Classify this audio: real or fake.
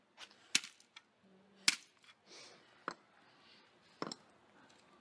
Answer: real